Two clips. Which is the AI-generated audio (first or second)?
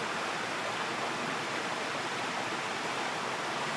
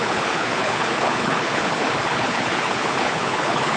second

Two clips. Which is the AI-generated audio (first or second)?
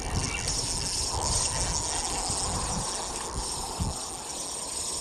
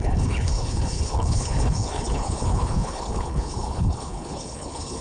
second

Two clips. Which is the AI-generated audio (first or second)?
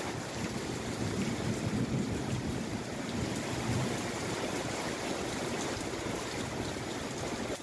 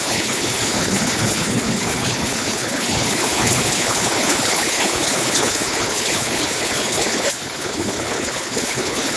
second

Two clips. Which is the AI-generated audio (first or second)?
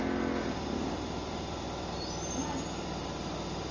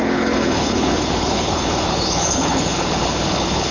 second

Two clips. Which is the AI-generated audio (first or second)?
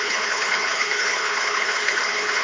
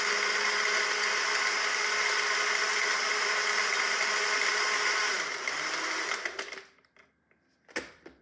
first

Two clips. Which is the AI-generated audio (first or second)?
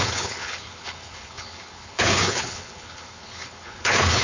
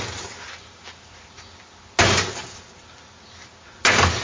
first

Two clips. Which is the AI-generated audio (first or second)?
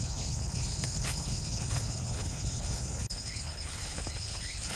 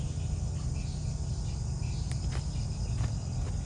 first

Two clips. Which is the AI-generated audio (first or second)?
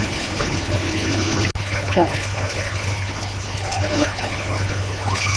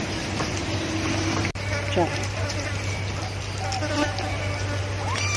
first